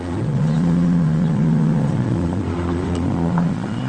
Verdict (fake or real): fake